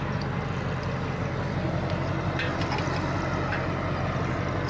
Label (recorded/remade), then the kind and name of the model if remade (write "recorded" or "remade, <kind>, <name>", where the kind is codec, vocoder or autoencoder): recorded